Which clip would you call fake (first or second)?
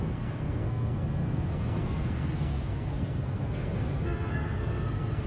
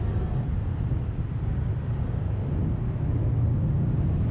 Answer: first